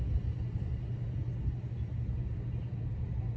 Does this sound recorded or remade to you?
recorded